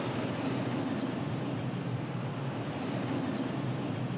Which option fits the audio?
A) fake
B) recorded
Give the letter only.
A